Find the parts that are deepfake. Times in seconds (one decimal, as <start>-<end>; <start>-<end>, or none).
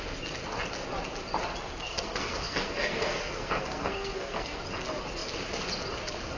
1.9-4.6